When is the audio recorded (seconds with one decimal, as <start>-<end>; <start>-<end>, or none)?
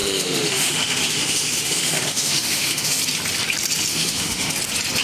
3.0-3.9; 4.5-5.0